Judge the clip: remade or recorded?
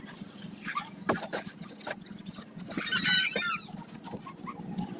recorded